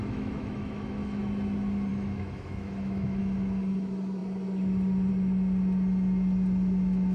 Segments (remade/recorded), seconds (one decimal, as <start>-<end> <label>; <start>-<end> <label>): 0.0-1.2 remade; 1.2-1.9 recorded; 1.9-3.2 remade; 3.2-7.1 recorded